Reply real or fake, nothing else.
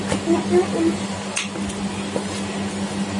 real